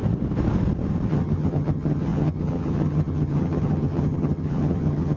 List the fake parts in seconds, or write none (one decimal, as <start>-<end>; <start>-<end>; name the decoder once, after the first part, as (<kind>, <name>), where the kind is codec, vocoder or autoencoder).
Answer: 1.1-5.2 (vocoder, HiFi-GAN)